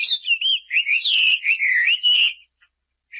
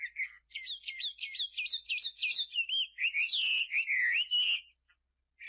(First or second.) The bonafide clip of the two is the second